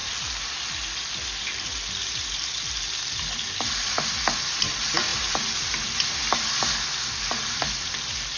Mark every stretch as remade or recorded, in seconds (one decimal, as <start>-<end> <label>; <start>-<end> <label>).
0.0-8.4 recorded